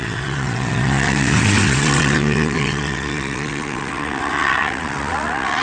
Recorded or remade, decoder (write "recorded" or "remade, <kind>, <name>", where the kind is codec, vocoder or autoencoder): remade, vocoder, WaveNeXt